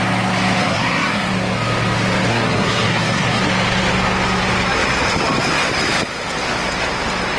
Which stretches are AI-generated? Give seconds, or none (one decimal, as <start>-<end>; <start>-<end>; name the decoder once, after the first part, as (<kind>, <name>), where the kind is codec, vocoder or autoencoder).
0.6-1.3 (codec, SNAC); 2.3-3.4